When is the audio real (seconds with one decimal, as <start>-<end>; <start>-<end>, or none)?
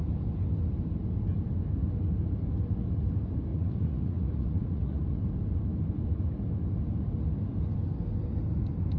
0.0-3.5; 5.2-9.0